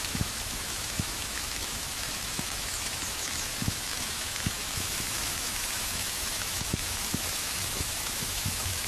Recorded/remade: remade